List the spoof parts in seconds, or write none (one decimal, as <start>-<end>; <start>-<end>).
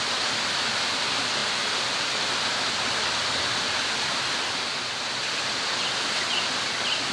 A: none